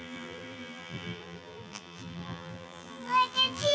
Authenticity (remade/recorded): remade